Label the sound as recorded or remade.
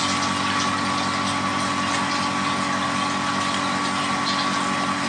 recorded